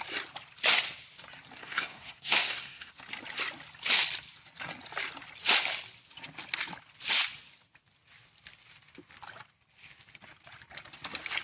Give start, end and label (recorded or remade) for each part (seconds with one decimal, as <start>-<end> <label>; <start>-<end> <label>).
0.0-1.6 recorded; 1.6-2.9 remade; 2.9-11.4 recorded